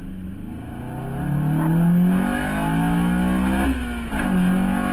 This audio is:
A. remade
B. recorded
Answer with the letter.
B